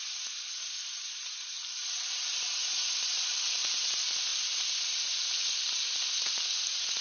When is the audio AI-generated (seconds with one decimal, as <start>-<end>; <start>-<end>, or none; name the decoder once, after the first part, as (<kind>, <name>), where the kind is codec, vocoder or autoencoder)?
none